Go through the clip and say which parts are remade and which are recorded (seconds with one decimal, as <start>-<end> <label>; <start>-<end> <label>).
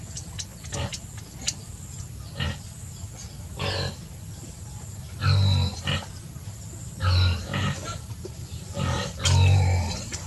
0.0-7.5 recorded; 7.5-8.3 remade; 8.3-10.3 recorded